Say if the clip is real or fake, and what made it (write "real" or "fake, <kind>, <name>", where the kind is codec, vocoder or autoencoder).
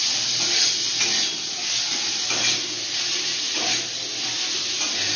real